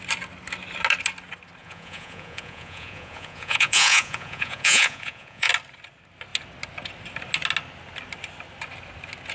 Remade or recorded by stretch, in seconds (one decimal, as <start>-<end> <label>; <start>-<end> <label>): 0.0-1.6 recorded; 1.6-5.5 remade; 5.5-9.3 recorded